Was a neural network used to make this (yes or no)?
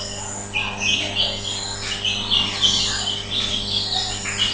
no